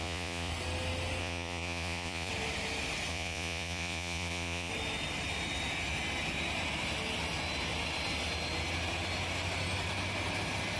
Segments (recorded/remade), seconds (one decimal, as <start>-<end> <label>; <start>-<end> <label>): 0.0-0.5 remade; 0.5-1.2 recorded; 1.2-2.3 remade; 2.3-3.1 recorded; 3.1-4.7 remade; 4.7-10.8 recorded